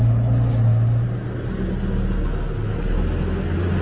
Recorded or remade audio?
recorded